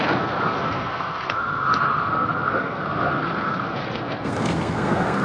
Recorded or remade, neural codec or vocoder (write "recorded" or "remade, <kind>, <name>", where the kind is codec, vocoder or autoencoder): remade, codec, SNAC